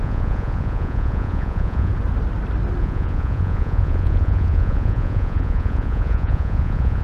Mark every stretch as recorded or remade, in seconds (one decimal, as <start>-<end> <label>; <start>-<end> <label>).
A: 0.0-1.9 remade; 1.9-2.8 recorded; 2.8-7.0 remade